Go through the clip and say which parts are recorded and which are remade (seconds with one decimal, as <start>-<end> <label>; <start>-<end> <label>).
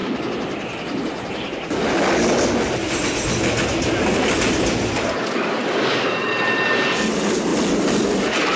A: 0.0-8.6 recorded